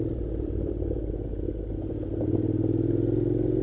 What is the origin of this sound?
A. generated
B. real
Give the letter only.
B